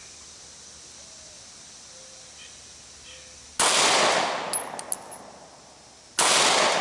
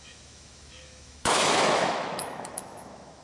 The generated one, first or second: second